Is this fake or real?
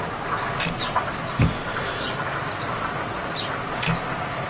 real